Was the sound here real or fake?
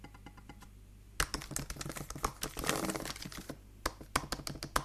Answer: real